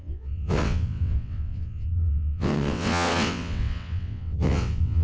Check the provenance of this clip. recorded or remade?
remade